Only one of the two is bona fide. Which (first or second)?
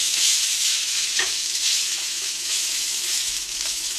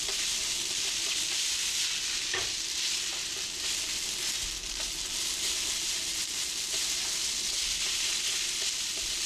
second